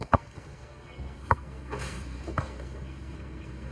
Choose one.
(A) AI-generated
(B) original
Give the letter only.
A